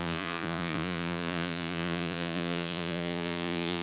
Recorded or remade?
remade